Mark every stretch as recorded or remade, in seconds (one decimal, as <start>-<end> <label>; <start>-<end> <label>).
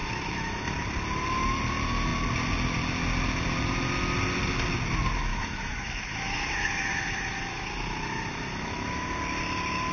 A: 0.0-0.6 remade; 0.6-5.3 recorded; 5.3-9.1 remade; 9.1-9.9 recorded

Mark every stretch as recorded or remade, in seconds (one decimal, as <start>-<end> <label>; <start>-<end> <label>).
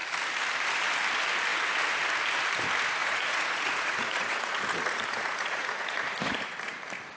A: 0.0-3.0 recorded; 3.0-6.8 remade; 6.8-7.2 recorded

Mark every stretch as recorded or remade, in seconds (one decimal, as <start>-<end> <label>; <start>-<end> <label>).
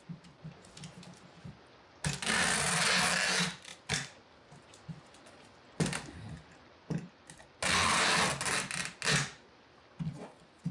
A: 0.0-10.7 recorded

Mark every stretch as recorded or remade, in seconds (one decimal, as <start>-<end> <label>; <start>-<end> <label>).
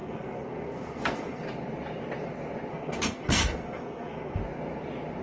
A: 0.0-1.4 remade; 1.4-2.7 recorded; 2.7-4.4 remade; 4.4-5.2 recorded